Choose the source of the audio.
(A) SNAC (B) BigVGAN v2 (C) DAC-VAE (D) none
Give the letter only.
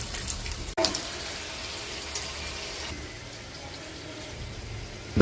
D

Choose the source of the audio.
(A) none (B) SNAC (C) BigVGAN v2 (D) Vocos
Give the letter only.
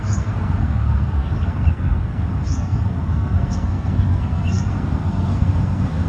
B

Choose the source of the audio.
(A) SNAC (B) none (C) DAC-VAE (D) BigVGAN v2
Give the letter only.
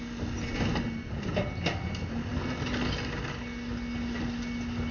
B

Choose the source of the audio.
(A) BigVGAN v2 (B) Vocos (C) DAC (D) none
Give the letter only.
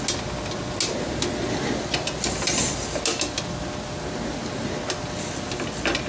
D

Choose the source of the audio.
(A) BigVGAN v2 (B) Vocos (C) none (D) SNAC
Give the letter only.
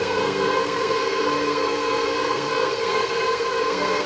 D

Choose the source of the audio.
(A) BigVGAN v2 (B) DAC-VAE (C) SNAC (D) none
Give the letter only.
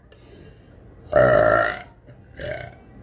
D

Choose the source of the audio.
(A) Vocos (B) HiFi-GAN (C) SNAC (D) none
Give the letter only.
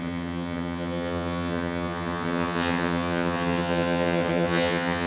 B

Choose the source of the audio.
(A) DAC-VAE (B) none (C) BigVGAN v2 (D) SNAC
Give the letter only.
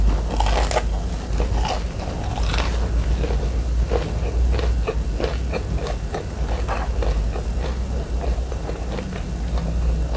B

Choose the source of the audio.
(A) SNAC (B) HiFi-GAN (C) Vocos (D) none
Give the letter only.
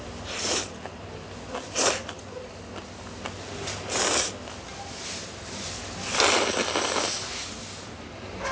D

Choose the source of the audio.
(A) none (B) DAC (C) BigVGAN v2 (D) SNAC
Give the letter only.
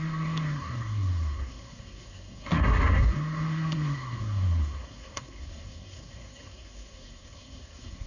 D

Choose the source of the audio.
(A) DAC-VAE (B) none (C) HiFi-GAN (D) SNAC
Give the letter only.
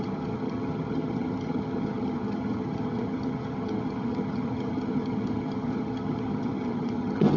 C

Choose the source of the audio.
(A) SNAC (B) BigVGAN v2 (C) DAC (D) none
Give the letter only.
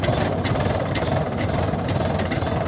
B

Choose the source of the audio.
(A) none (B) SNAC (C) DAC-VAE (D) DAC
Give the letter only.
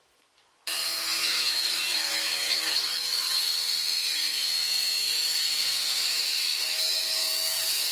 C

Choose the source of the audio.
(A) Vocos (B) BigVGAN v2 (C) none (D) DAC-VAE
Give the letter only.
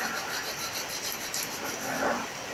C